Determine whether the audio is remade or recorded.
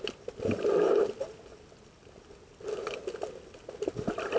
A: recorded